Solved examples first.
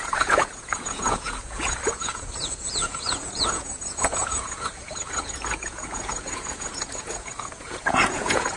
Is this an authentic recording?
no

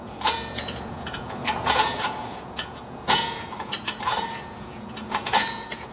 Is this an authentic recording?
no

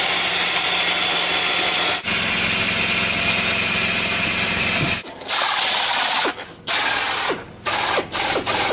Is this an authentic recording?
yes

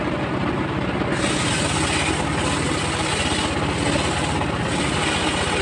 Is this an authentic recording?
yes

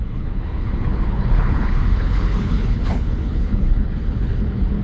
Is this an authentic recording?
no